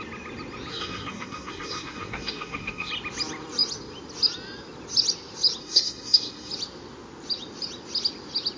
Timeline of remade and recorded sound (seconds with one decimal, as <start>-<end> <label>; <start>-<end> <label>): 0.0-0.7 recorded; 0.7-2.9 remade; 2.9-5.6 recorded; 5.6-6.5 remade; 6.5-8.6 recorded